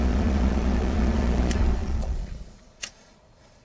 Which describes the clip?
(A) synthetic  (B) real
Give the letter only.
A